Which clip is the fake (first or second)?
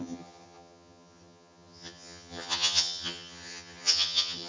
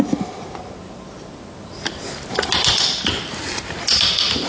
first